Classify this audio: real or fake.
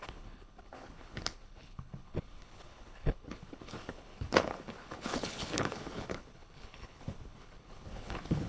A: fake